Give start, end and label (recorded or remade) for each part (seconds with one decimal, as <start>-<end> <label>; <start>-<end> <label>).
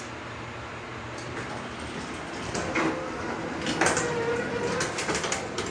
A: 0.0-5.7 recorded